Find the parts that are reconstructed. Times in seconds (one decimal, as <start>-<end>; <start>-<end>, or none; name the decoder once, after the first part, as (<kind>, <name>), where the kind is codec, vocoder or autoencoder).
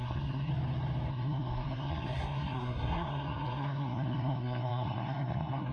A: 0.0-0.5 (codec, SNAC); 1.1-5.7